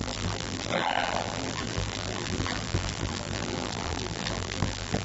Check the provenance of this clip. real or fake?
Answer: fake